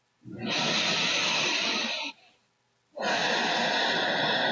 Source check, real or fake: real